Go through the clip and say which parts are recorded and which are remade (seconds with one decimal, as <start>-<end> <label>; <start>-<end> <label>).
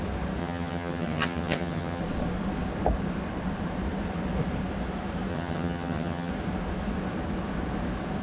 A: 0.0-0.4 recorded; 0.4-2.0 remade; 2.0-5.3 recorded; 5.3-6.3 remade; 6.3-8.2 recorded